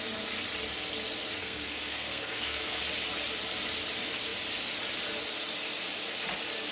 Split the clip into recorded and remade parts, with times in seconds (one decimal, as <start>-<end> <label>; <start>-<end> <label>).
0.0-1.4 recorded; 1.4-2.8 remade; 2.8-6.7 recorded